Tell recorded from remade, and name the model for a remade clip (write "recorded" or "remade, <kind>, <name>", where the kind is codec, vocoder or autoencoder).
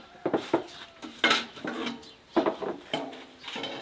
recorded